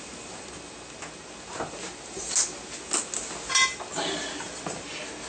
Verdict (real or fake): real